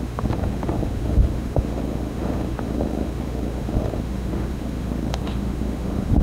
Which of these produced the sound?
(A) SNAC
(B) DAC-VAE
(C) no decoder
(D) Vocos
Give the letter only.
B